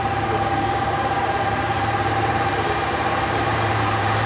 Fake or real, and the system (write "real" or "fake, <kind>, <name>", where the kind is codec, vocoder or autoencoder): fake, vocoder, BigVGAN v2